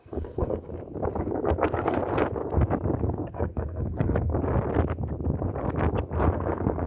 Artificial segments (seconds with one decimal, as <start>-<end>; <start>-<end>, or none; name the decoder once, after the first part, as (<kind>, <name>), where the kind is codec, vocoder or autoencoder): 0.0-0.7 (codec, SNAC); 1.2-2.0; 3.0-4.3; 6.3-6.9